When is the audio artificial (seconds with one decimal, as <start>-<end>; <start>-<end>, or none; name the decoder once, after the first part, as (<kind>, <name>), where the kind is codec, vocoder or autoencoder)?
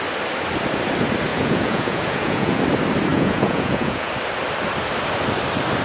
1.3-2.6 (vocoder, Vocos); 3.1-4.1